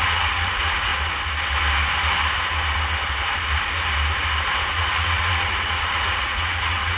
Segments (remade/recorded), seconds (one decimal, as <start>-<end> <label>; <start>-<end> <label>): 0.0-0.9 remade; 0.9-4.7 recorded; 4.7-7.0 remade